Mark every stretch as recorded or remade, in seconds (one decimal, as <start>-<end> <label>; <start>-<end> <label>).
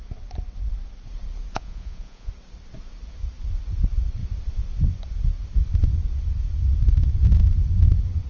0.0-1.5 recorded; 1.5-2.3 remade; 2.3-8.3 recorded